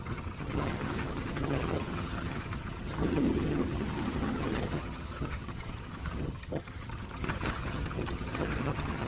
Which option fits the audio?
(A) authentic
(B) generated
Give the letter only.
B